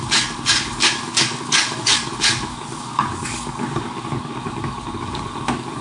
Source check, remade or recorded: remade